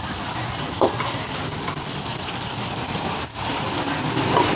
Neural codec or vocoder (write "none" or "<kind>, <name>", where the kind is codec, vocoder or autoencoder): none